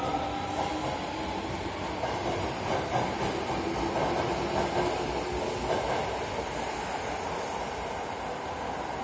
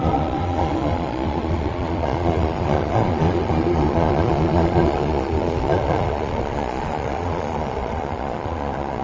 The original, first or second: first